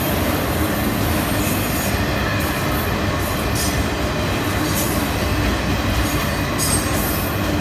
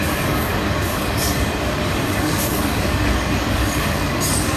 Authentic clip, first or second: first